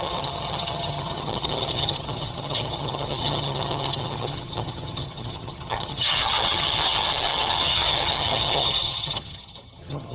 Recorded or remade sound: remade